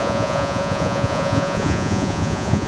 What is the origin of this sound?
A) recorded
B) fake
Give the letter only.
B